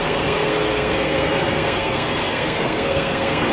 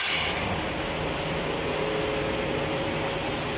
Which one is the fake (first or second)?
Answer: first